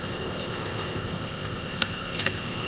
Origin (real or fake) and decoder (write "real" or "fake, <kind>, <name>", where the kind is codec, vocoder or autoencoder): fake, codec, ZipCodec